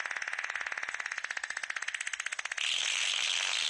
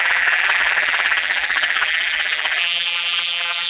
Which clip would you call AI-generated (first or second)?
second